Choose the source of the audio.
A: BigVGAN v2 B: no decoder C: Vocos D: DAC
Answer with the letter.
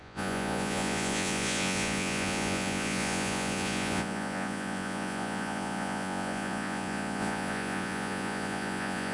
C